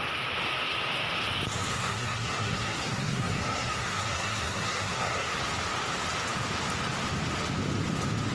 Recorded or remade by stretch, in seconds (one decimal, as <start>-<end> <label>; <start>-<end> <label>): 0.0-1.7 recorded; 1.7-5.4 remade; 5.4-8.3 recorded

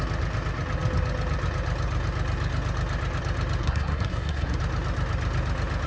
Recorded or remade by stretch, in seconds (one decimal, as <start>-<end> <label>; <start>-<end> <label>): 0.0-3.6 recorded; 3.6-4.6 remade; 4.6-5.9 recorded

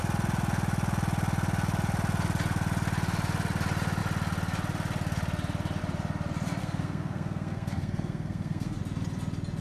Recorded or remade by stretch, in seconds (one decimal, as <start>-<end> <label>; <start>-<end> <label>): 0.0-6.6 recorded; 6.6-8.8 remade; 8.8-9.6 recorded

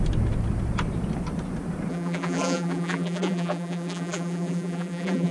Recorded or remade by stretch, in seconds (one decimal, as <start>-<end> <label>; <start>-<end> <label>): 0.0-1.9 recorded; 1.9-5.3 remade

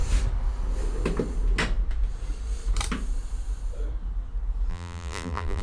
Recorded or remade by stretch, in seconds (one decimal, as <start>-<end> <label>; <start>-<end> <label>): 0.0-4.7 recorded; 4.7-5.6 remade

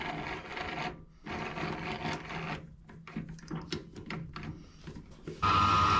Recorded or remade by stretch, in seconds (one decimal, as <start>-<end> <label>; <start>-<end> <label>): 0.0-6.0 recorded

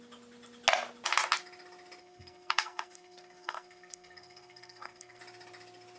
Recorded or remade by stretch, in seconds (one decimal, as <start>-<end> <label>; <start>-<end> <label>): 0.0-2.0 recorded; 2.0-5.2 remade; 5.2-6.0 recorded

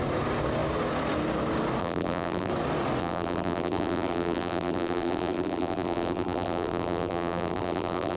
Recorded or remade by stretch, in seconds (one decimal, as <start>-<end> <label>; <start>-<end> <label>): 0.0-1.8 recorded; 1.8-2.5 remade; 2.5-3.0 recorded; 3.0-8.2 remade